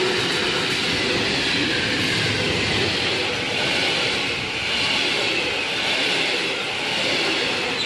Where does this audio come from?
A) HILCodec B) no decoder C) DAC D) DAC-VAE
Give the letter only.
B